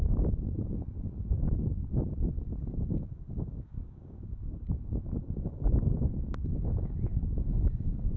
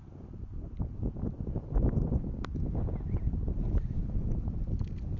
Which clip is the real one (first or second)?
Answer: second